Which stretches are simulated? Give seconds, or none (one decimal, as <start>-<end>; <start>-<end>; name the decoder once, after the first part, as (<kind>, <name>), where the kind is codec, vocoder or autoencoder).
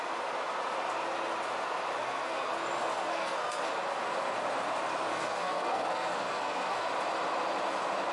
2.0-2.5 (codec, SNAC); 3.1-3.7; 5.1-6.9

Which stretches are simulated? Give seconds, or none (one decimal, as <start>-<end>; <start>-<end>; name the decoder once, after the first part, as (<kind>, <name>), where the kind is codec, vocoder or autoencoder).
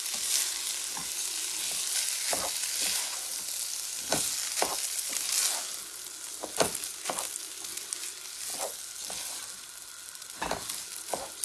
none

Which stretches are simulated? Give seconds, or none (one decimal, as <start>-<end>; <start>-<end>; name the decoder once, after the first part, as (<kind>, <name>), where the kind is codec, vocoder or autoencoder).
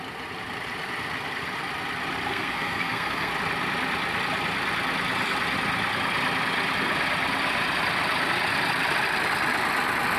2.3-3.3 (codec, SNAC)